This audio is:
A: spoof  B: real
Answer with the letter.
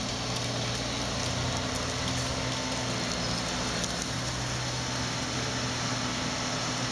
B